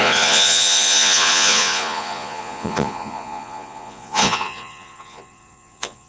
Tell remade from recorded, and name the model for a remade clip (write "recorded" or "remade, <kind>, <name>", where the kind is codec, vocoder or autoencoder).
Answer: remade, vocoder, Vocos